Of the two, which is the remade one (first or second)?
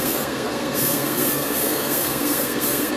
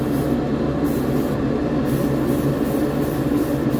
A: first